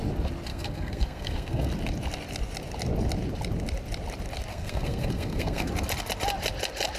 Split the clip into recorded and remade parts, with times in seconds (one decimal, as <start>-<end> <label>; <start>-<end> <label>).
0.0-0.5 recorded; 0.5-1.7 remade; 1.7-4.5 recorded; 4.5-5.7 remade; 5.7-7.0 recorded